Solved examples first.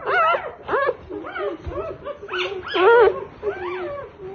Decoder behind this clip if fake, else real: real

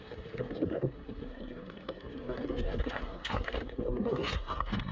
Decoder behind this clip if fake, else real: fake, codec, SNAC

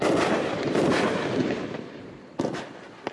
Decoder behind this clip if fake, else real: real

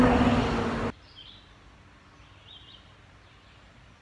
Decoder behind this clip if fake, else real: real